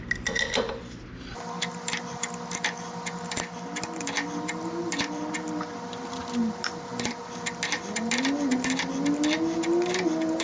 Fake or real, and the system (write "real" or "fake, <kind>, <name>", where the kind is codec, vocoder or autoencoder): real